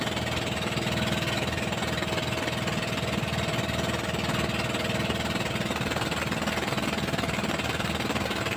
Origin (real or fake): real